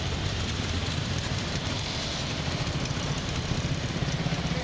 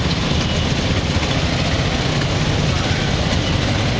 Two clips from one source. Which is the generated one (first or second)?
first